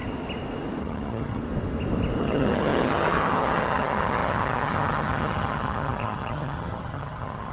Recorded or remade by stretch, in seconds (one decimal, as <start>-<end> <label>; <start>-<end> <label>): 0.0-0.8 recorded; 0.8-1.4 remade; 1.4-2.2 recorded; 2.2-7.5 remade